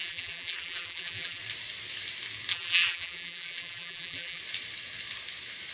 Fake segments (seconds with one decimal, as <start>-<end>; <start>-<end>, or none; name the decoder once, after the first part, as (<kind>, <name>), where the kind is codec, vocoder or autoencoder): 0.0-1.4 (vocoder, BigVGAN v2); 2.5-4.4